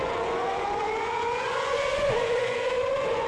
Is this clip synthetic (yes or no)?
yes